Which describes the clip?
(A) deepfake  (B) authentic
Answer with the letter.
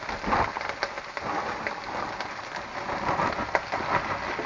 B